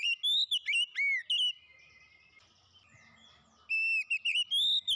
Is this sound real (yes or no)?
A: yes